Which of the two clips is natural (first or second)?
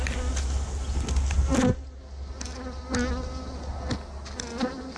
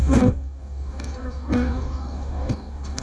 first